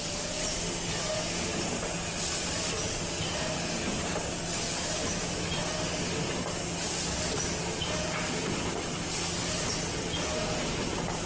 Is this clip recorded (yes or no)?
yes